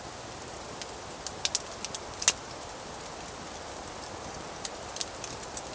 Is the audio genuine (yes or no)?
yes